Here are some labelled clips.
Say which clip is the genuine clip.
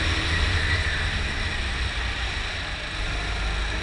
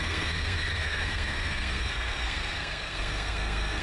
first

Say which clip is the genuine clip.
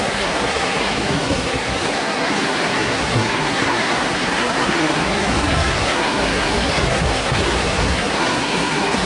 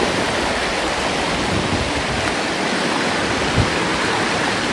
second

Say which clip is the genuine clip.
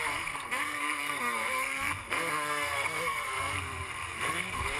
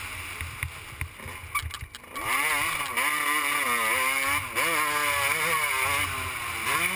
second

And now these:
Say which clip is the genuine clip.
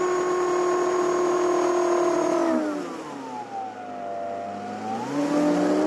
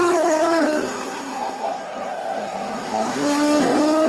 first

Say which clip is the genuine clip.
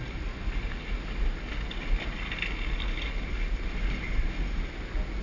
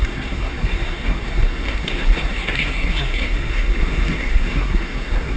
first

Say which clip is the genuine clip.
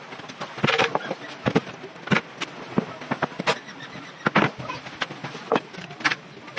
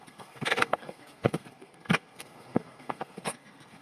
first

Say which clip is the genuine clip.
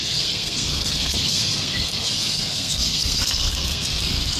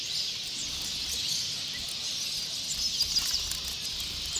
second